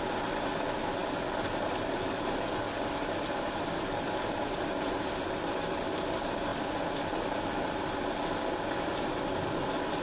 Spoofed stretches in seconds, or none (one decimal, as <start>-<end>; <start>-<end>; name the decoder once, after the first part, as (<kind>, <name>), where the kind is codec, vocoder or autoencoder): none